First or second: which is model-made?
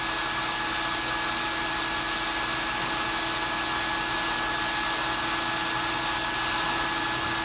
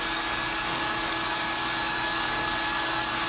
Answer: second